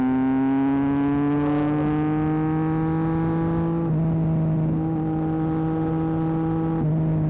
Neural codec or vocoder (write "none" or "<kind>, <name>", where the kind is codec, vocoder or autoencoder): none